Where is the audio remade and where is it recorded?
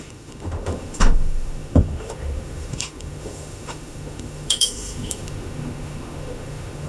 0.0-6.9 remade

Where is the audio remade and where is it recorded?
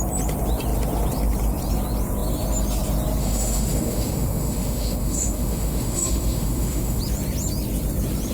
0.0-3.2 recorded; 3.2-7.0 remade; 7.0-8.3 recorded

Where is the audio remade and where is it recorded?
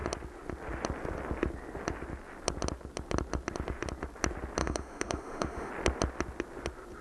0.0-4.6 recorded; 4.6-5.7 remade; 5.7-7.0 recorded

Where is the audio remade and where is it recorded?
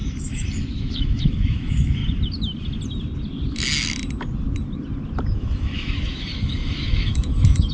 0.0-2.0 remade; 2.0-5.2 recorded; 5.2-7.7 remade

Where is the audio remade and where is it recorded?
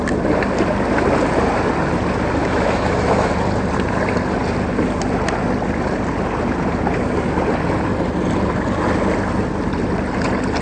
0.0-2.4 recorded; 2.4-3.3 remade; 3.3-10.6 recorded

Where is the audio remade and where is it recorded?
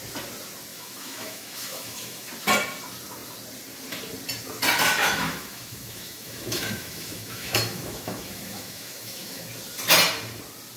0.0-0.7 recorded; 0.7-2.3 remade; 2.3-5.0 recorded; 5.0-9.5 remade; 9.5-10.8 recorded